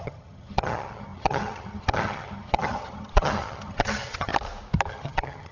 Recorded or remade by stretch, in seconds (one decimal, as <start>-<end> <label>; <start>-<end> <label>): 0.0-4.3 remade; 4.3-4.9 recorded; 4.9-5.5 remade